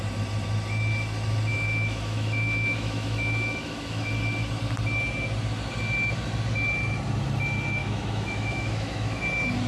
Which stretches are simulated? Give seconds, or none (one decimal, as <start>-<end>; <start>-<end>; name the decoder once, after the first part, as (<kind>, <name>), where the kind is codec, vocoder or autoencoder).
1.5-4.1 (autoencoder, DAC-VAE); 7.8-9.2